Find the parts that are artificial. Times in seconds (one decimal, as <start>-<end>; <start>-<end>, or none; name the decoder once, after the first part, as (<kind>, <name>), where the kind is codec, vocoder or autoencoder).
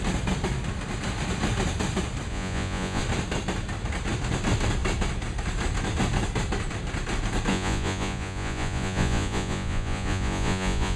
2.3-3.0 (vocoder, Vocos); 7.5-11.0